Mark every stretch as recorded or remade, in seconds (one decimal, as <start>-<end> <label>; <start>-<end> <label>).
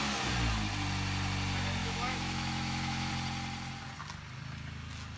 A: 0.0-1.8 recorded; 1.8-3.1 remade; 3.1-5.2 recorded